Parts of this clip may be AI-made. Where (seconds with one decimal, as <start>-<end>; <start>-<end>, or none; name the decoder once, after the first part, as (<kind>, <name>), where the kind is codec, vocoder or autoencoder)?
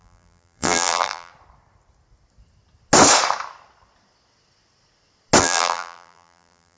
0.0-1.3 (vocoder, BigVGAN v2); 5.4-6.8